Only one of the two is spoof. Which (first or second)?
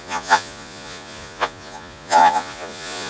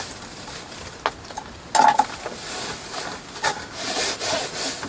first